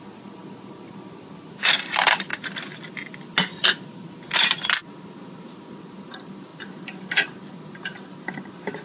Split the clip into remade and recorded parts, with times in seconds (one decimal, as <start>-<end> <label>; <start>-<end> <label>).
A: 0.0-8.8 recorded